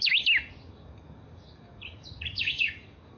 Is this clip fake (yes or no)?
yes